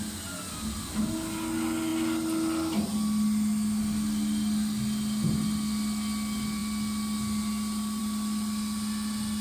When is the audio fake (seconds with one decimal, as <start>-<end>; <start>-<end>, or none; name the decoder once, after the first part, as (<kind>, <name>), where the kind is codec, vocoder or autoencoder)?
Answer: none